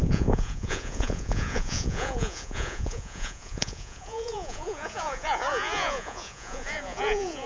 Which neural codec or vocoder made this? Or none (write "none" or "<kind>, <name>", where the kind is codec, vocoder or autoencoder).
vocoder, Vocos